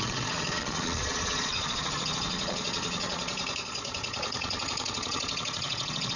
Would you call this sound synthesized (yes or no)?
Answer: yes